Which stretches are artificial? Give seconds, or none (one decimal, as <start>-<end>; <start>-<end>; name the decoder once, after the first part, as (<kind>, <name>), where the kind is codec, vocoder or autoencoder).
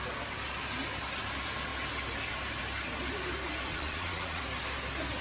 3.7-4.4 (vocoder, Vocos)